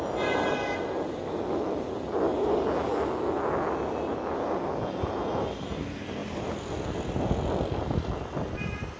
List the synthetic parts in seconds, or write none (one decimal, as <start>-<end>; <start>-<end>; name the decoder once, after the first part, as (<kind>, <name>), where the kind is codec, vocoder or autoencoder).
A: 0.0-2.3 (vocoder, BigVGAN v2); 5.5-6.2; 7.8-9.0